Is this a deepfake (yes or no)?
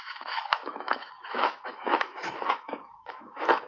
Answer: yes